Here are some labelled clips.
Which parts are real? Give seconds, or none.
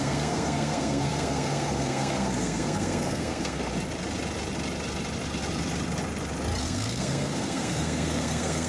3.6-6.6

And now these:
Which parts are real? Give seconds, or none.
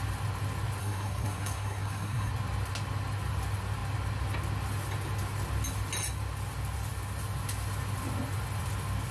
0.0-0.8; 2.3-9.1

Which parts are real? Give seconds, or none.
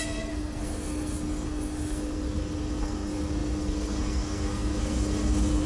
none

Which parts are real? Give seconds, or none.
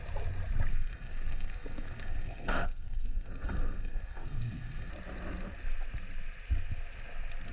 0.0-0.7; 4.9-7.5